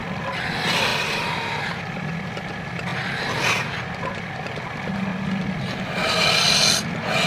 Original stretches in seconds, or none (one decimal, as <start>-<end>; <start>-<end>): 0.0-0.9; 1.6-7.3